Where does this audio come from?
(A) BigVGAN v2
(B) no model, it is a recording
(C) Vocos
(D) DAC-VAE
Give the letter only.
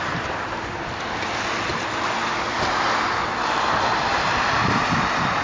B